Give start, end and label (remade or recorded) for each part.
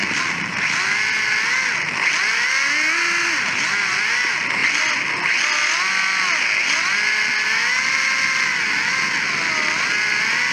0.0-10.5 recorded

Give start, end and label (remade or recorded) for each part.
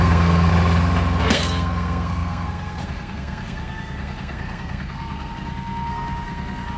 0.0-0.5 remade; 0.5-1.2 recorded; 1.2-6.8 remade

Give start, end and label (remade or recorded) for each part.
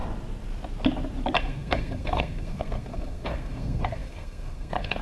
0.0-1.4 recorded; 1.4-5.0 remade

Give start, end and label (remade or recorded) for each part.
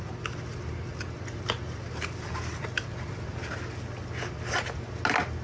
0.0-5.4 recorded